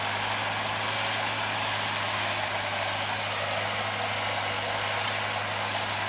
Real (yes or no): yes